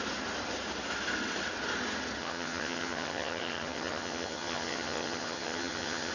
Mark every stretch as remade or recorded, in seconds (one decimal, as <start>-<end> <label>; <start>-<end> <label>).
0.0-2.2 recorded; 2.2-6.1 remade